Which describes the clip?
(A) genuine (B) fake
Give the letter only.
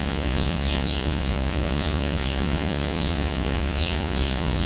B